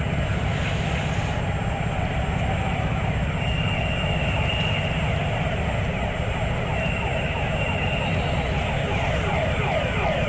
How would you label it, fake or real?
real